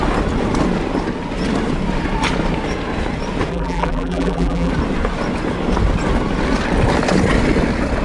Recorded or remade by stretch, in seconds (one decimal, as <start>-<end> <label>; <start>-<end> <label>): 0.0-3.5 recorded; 3.5-4.7 remade; 4.7-8.0 recorded

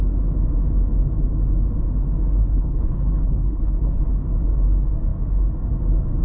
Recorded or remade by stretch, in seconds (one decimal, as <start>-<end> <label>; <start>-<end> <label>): 0.0-2.4 recorded; 2.4-4.0 remade; 4.0-6.2 recorded

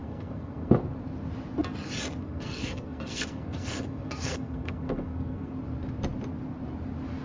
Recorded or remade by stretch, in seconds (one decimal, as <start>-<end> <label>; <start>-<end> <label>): 0.0-0.8 remade; 0.8-2.2 recorded; 2.2-5.5 remade; 5.5-7.2 recorded

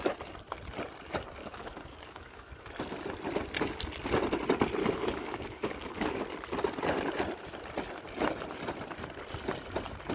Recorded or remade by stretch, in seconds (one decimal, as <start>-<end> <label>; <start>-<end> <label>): 0.0-1.4 recorded; 1.4-2.5 remade; 2.5-4.8 recorded; 4.8-6.2 remade; 6.2-10.1 recorded

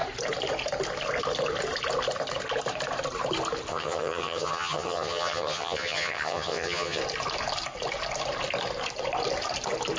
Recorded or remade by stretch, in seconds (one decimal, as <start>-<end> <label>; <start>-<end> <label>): 0.0-3.7 recorded; 3.7-7.0 remade; 7.0-10.0 recorded

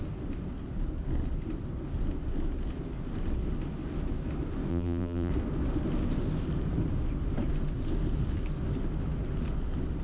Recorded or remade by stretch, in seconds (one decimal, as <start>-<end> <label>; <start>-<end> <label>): 0.0-4.7 recorded; 4.7-5.3 remade; 5.3-10.0 recorded